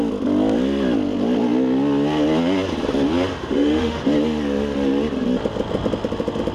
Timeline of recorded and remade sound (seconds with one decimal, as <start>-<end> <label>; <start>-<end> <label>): 0.0-3.3 recorded; 3.3-4.0 remade; 4.0-6.5 recorded